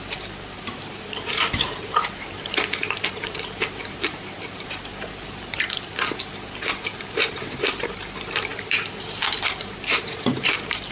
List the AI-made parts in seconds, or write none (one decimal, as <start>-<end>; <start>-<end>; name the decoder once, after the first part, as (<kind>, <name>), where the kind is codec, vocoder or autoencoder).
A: 0.0-4.9 (vocoder, BigVGAN v2); 7.0-10.9